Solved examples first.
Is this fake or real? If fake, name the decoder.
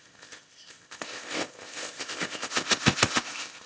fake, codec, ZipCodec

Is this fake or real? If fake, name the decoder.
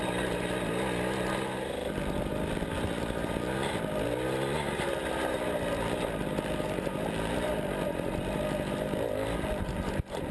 real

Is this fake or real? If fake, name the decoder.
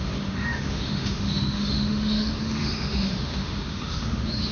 fake, autoencoder, DAC-VAE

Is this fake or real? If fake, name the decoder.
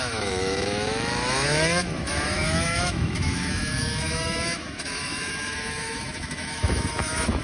fake, autoencoder, DAC-VAE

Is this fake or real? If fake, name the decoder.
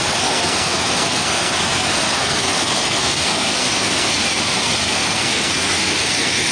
fake, codec, SNAC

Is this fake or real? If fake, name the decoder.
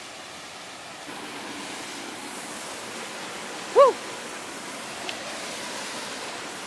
real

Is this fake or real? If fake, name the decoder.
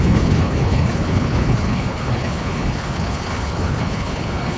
fake, codec, HILCodec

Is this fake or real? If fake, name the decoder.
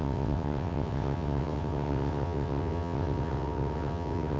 fake, vocoder, WaveNeXt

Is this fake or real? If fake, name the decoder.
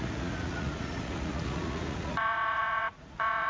fake, vocoder, Vocos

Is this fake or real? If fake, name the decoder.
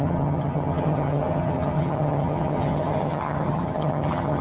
fake, vocoder, HiFi-GAN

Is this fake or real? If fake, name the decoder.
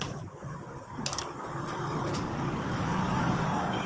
fake, codec, DAC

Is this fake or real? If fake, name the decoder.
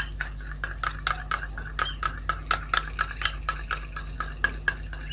real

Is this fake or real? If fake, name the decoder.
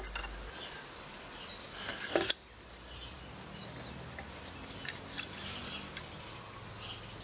real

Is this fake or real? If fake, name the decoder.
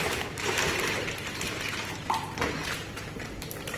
fake, vocoder, BigVGAN v2